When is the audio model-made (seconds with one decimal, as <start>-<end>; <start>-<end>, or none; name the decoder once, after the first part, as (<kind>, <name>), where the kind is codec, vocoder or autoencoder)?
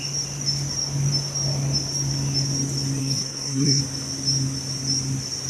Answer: 3.0-3.8 (codec, SNAC)